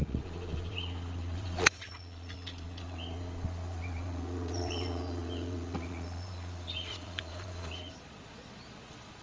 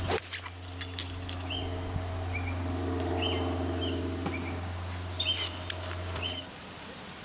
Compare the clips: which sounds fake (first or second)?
first